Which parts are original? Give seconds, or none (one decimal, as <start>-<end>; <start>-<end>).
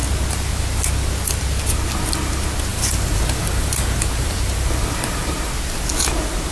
0.0-2.7; 5.5-6.5